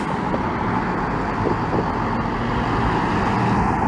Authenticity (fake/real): real